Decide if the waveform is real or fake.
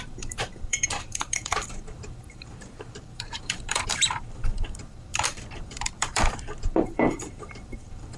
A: fake